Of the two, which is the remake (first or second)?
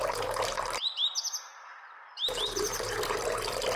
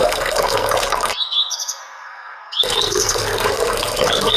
second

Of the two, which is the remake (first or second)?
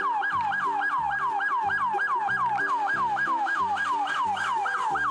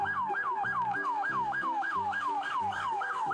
second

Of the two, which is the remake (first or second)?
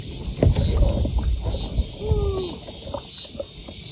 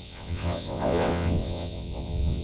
second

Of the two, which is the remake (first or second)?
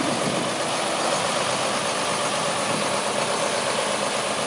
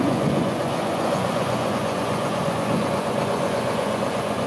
second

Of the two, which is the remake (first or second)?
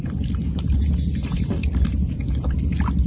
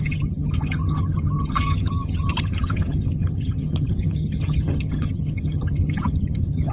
second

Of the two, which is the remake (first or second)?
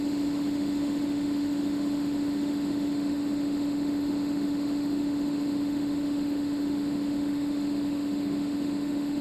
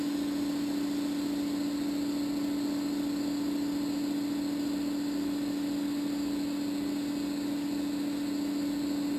first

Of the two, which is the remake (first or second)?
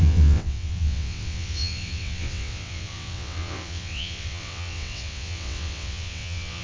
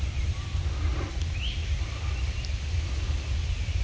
first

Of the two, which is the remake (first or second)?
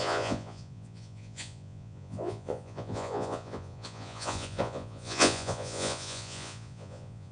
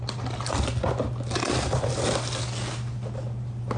first